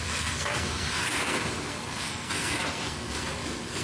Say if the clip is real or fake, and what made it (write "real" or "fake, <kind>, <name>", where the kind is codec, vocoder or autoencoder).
fake, codec, SNAC